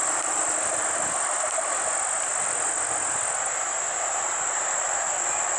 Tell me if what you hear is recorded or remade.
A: recorded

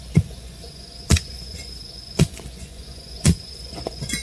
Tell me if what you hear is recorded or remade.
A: remade